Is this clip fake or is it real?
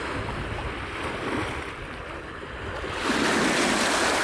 fake